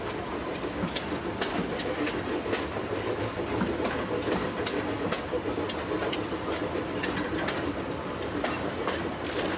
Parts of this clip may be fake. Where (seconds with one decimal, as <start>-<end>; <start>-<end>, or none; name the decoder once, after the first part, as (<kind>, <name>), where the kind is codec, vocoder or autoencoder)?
none

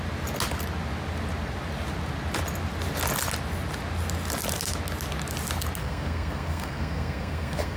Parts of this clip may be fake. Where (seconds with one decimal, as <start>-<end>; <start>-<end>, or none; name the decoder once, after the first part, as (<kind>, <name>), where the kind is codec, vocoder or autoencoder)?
5.8-7.8 (codec, SNAC)